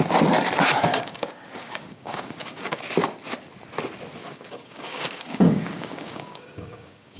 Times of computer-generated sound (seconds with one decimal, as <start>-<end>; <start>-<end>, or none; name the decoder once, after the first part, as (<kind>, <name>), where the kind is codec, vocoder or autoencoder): 0.9-2.8 (codec, DAC); 4.2-7.2